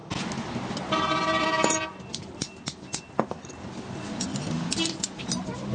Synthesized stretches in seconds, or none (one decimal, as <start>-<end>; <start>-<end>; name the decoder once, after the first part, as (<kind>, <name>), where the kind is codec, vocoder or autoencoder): none